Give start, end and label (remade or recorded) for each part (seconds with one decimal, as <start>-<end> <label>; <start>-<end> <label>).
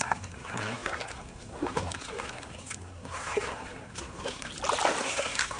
0.0-4.5 remade; 4.5-5.0 recorded; 5.0-5.6 remade